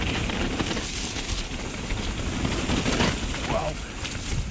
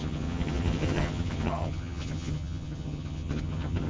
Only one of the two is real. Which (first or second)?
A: first